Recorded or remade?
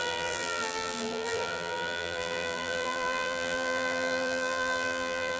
remade